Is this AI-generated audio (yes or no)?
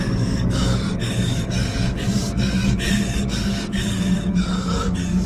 yes